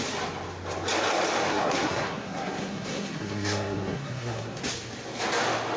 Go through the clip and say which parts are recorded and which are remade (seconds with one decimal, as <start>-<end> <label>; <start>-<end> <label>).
0.0-1.5 recorded; 1.5-4.6 remade; 4.6-5.8 recorded